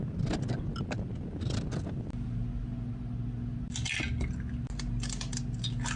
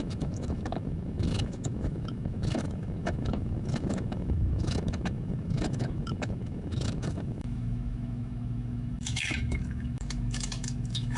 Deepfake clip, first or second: second